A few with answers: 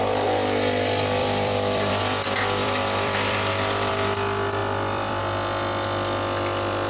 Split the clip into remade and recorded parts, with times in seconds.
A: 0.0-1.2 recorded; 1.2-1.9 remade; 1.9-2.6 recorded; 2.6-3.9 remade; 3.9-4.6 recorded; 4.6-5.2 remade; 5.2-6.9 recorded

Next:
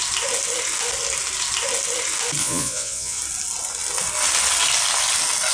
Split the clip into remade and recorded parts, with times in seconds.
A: 0.0-2.4 recorded; 2.4-3.2 remade; 3.2-5.5 recorded

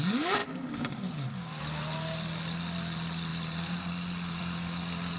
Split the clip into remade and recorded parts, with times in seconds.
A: 0.0-5.2 recorded

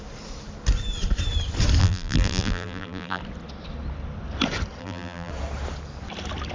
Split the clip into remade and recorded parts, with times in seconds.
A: 0.0-1.8 recorded; 1.8-3.2 remade; 3.2-4.8 recorded; 4.8-5.3 remade; 5.3-6.5 recorded

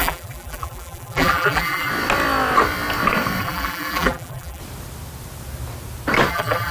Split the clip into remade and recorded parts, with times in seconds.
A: 0.0-1.9 remade; 1.9-3.4 recorded; 3.4-4.6 remade; 4.6-6.3 recorded; 6.3-6.7 remade